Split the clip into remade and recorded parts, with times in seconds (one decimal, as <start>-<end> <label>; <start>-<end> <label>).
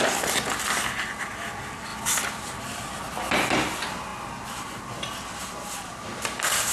0.0-6.7 recorded